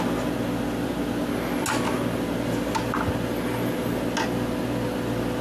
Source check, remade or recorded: recorded